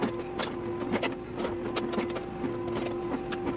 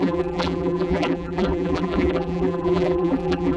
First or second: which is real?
first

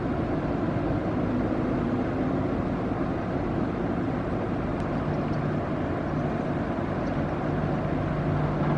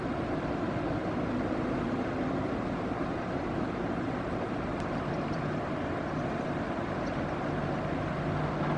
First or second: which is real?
first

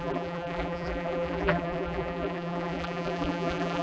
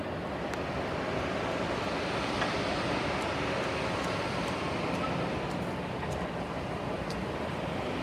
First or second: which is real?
second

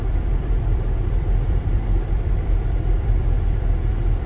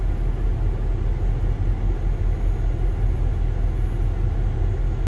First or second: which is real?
second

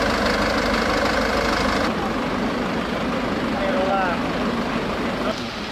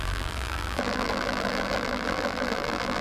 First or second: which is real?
first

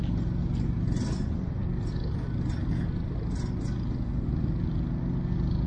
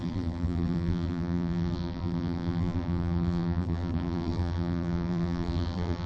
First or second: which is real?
first